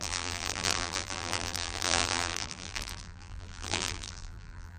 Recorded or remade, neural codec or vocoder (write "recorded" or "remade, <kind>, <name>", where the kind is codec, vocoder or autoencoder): remade, vocoder, BigVGAN v2